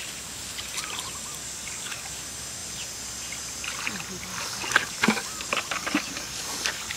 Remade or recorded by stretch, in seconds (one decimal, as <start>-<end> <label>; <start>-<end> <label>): 0.0-1.4 recorded; 1.4-2.2 remade; 2.2-4.3 recorded; 4.3-7.0 remade